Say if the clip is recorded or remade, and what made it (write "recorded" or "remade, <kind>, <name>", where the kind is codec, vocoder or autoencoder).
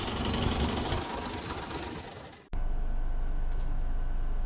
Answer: recorded